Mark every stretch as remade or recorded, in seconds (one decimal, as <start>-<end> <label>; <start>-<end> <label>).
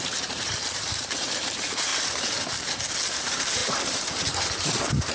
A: 0.0-1.9 remade; 1.9-3.2 recorded; 3.2-5.1 remade